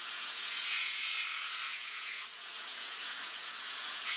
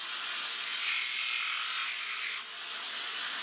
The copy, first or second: first